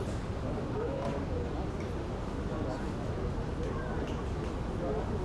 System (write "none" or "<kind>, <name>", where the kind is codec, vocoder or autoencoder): none